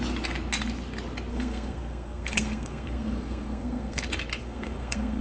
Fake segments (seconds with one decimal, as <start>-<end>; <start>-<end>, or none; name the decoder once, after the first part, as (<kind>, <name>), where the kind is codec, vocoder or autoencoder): 1.3-4.0 (codec, SNAC); 4.4-5.2

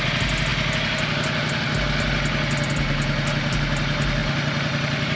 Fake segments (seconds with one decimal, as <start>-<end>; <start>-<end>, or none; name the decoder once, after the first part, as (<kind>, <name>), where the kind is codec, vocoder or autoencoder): none

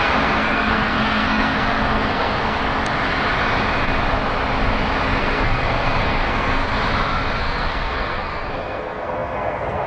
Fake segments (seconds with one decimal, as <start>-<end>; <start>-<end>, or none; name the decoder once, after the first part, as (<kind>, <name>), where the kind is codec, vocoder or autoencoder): 0.0-2.6 (codec, SNAC); 5.2-6.6; 7.4-9.9

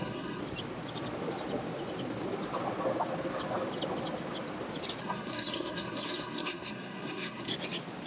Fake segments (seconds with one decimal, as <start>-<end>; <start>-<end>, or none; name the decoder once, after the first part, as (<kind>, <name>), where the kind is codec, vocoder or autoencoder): 0.0-0.4 (codec, SNAC); 5.0-7.5

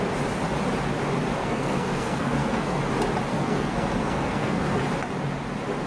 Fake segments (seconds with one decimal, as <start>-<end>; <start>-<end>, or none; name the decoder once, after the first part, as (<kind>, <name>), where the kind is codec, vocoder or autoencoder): 1.4-2.8 (codec, SNAC); 3.3-4.8

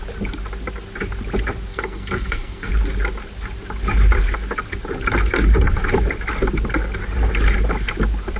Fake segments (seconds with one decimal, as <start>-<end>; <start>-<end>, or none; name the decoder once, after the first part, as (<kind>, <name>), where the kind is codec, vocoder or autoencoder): 1.7-2.7 (codec, SNAC)

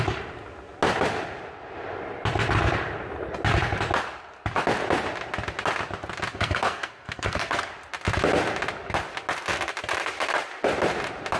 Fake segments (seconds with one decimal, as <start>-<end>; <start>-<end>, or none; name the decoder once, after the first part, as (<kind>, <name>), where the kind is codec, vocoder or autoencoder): 6.3-7.7 (codec, SNAC)

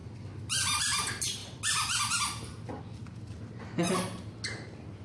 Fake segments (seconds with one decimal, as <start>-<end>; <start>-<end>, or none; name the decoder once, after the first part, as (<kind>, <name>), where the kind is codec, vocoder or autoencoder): none